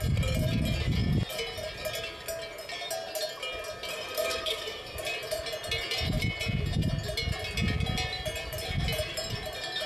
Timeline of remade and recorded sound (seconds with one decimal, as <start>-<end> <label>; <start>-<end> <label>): 0.0-3.9 recorded; 3.9-4.8 remade; 4.8-9.9 recorded